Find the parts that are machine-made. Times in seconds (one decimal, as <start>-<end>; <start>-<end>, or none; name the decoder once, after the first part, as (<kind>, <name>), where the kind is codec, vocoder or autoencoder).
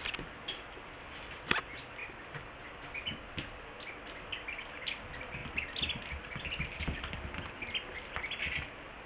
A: 2.0-2.9 (vocoder, BigVGAN v2)